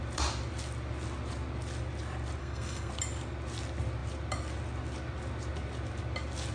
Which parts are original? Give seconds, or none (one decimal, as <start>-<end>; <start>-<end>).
0.0-2.4; 2.9-6.5

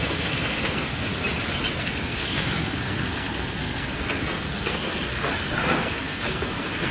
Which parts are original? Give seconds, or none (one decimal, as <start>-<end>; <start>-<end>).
1.1-1.8

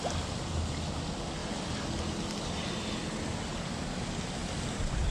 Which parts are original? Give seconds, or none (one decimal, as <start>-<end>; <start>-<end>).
0.0-5.1

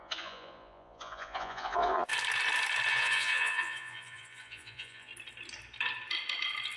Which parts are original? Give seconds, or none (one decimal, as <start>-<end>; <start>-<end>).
2.1-2.9; 5.1-6.8

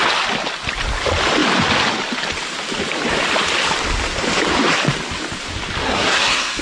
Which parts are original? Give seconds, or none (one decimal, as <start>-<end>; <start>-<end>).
0.0-5.8